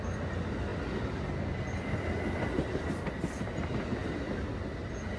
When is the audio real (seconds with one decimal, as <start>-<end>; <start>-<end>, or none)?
0.0-5.2